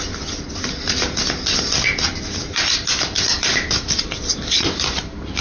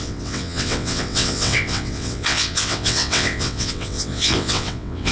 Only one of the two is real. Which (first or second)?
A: first